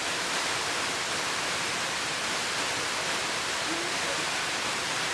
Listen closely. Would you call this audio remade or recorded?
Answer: recorded